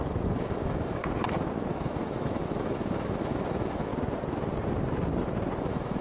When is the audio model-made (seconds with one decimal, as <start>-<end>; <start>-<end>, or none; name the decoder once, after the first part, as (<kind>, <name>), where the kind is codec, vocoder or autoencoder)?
0.0-1.0 (autoencoder, DAC-VAE); 1.7-3.9; 5.6-6.0